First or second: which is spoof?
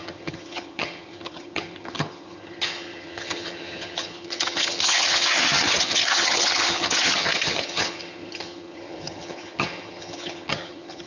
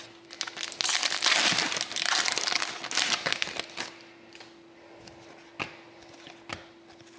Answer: first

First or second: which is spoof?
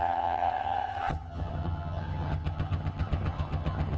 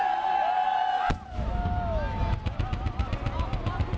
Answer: first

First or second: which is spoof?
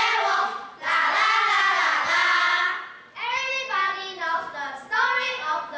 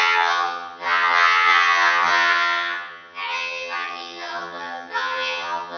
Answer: second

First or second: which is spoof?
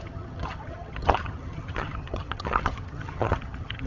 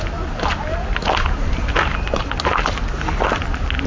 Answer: first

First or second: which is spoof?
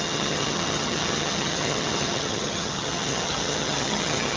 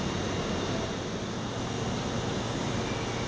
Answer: first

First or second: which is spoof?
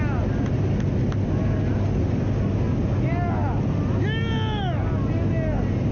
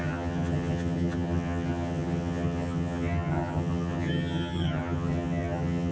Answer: second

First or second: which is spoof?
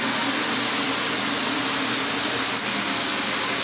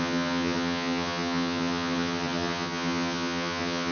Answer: second